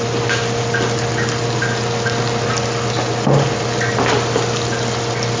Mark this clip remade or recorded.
recorded